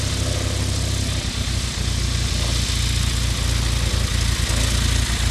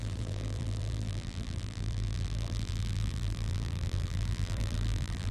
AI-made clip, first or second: second